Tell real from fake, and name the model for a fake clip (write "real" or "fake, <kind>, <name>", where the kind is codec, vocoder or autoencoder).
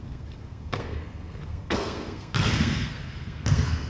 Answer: fake, codec, SNAC